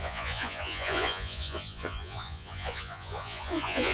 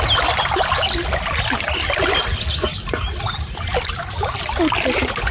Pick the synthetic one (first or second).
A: first